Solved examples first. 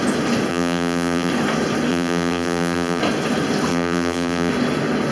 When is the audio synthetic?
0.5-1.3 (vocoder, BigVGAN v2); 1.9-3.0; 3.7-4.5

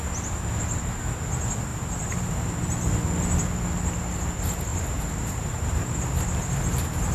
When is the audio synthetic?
1.7-2.5 (vocoder, BigVGAN v2); 4.7-6.0

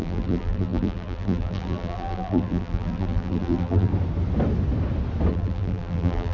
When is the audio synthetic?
0.0-3.9 (vocoder, BigVGAN v2); 5.3-6.3

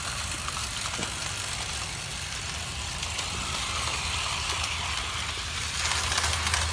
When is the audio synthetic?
none

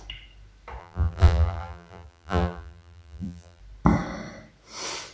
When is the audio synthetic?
0.8-3.6 (vocoder, BigVGAN v2)

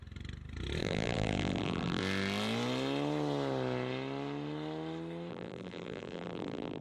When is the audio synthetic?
0.8-2.0 (vocoder, BigVGAN v2); 5.3-6.8

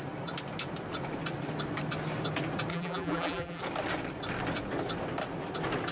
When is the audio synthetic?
2.7-3.6 (vocoder, BigVGAN v2)